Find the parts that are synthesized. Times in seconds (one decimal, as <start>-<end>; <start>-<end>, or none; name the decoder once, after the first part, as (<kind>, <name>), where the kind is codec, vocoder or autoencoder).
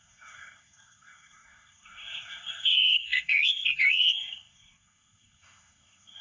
0.0-6.2 (codec, SNAC)